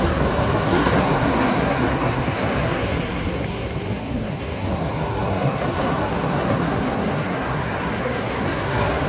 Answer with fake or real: fake